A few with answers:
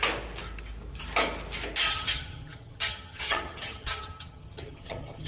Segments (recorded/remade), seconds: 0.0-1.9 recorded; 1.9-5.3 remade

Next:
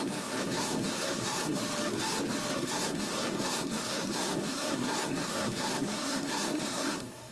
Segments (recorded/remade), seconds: 0.0-1.6 remade; 1.6-2.5 recorded; 2.5-7.3 remade